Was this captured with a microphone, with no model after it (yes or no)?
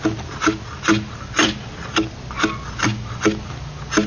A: yes